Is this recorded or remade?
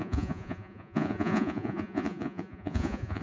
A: remade